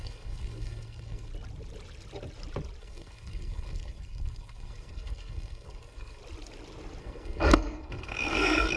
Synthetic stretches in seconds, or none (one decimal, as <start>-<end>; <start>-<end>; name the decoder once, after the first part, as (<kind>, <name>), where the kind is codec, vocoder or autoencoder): 0.0-1.3 (codec, SNAC); 2.8-6.2; 7.0-8.8